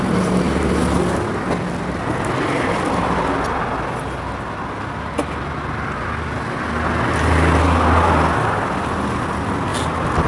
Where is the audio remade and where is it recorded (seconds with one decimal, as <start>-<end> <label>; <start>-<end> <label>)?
0.0-10.3 recorded